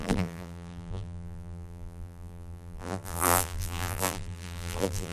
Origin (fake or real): fake